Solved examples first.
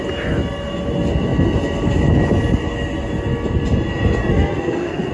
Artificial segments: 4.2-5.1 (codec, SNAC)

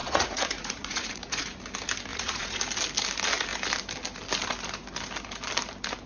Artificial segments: 0.0-1.6 (vocoder, Vocos); 2.1-2.6

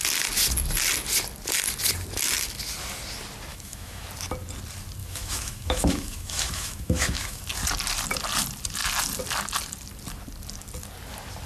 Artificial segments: 3.5-4.1 (autoencoder, DAC-VAE); 5.0-7.4

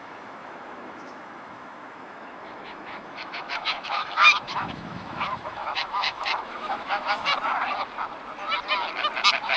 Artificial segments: 0.0-7.3 (autoencoder, DAC-VAE)

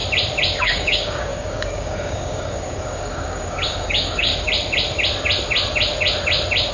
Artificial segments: 0.6-4.3 (codec, DAC)